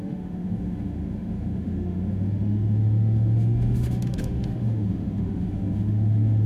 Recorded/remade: remade